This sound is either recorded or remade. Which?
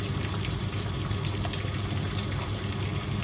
recorded